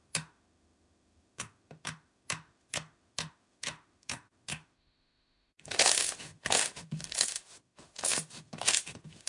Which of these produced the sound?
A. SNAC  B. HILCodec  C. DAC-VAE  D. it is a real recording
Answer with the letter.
C